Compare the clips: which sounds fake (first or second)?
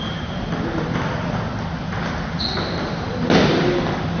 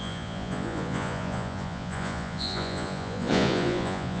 second